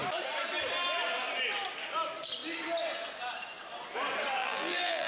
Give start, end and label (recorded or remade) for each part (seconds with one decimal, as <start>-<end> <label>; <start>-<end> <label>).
0.0-4.4 recorded; 4.4-5.1 remade